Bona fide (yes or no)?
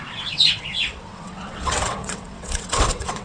no